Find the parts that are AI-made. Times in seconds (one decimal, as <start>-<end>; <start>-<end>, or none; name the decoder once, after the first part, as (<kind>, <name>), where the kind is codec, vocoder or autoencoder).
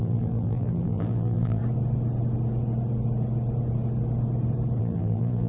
0.0-1.6 (vocoder, BigVGAN v2); 4.8-5.5